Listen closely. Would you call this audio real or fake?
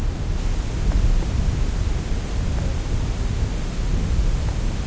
real